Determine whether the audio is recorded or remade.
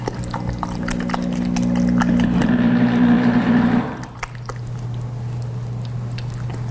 recorded